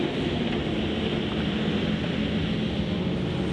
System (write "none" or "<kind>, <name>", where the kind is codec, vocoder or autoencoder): none